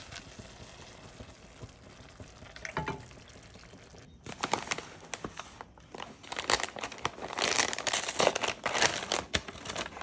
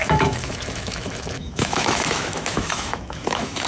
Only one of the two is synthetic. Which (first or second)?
second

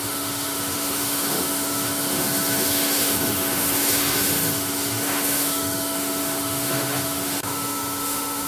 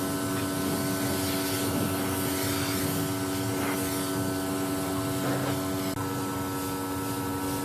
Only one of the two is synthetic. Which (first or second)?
first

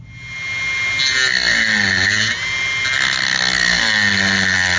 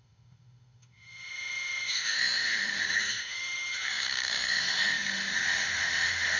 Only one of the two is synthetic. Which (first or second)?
second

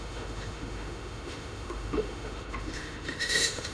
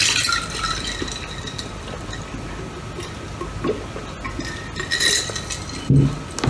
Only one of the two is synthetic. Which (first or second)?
first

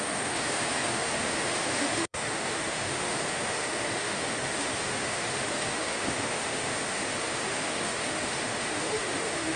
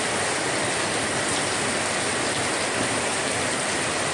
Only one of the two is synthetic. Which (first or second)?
first